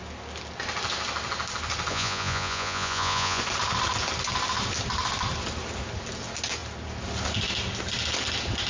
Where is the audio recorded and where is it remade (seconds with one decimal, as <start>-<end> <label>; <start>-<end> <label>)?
0.0-1.9 recorded; 1.9-3.4 remade; 3.4-8.7 recorded